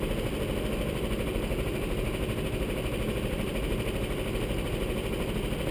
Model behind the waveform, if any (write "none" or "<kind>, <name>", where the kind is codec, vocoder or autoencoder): none